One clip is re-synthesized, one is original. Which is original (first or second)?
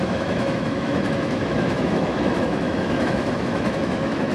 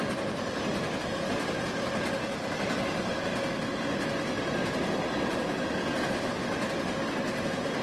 second